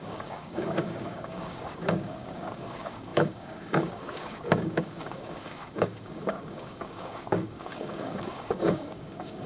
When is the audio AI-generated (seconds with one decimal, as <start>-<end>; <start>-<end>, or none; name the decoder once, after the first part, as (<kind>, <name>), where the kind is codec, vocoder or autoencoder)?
0.0-9.5 (codec, DAC)